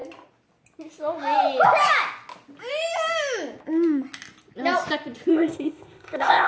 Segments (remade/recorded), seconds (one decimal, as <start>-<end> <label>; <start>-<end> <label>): 0.0-5.3 recorded; 5.3-6.5 remade